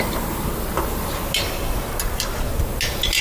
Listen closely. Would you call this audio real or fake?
real